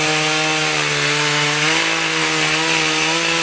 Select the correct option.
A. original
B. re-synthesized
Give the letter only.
A